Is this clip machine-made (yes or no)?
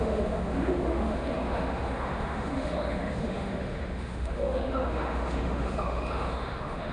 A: yes